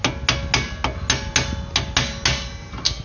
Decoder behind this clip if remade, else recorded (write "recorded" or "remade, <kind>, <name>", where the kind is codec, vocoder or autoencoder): recorded